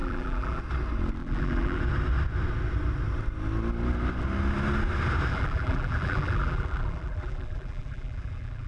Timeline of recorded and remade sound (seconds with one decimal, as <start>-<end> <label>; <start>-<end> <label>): 0.0-0.6 remade; 0.6-1.2 recorded; 1.2-1.8 remade; 1.8-5.3 recorded; 5.3-8.7 remade